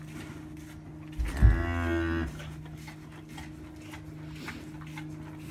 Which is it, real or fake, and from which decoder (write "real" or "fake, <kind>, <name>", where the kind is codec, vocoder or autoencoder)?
real